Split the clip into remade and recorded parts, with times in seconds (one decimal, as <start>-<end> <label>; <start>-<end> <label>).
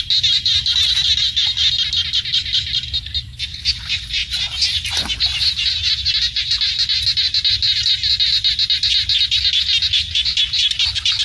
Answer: 0.0-11.2 recorded